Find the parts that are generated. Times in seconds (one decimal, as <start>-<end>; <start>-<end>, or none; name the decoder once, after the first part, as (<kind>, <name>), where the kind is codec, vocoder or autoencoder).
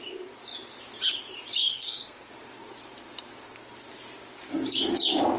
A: 1.6-2.3 (codec, SNAC)